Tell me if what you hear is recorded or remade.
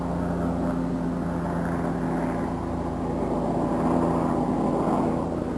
recorded